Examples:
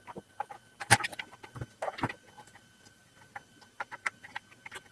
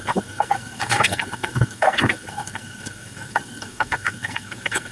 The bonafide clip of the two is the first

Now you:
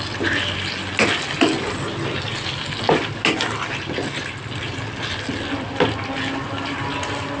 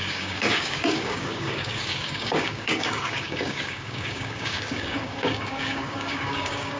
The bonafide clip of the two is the first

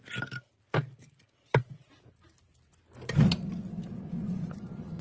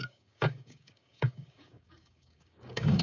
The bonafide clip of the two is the first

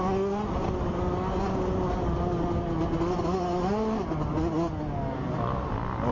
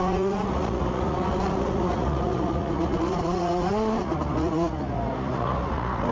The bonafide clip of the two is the first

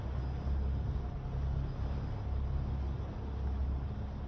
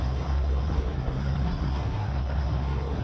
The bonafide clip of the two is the first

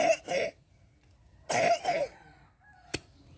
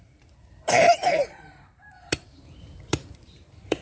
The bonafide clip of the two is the first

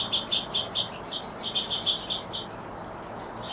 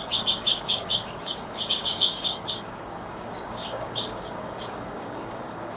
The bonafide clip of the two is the first